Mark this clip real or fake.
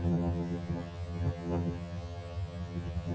fake